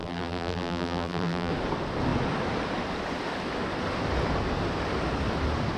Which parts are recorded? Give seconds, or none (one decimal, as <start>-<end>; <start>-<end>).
1.5-5.8